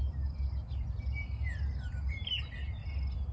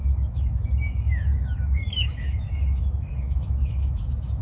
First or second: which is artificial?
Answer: second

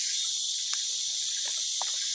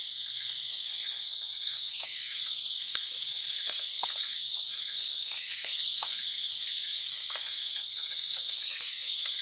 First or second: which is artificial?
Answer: second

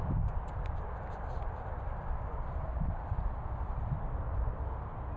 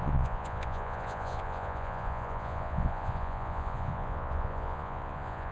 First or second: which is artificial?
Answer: second